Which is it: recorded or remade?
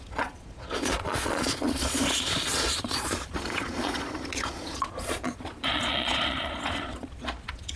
remade